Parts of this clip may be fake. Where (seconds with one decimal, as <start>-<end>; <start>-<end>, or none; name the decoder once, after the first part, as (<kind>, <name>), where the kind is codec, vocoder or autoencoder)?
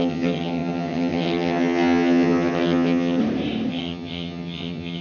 0.0-3.2 (vocoder, HiFi-GAN); 3.7-5.0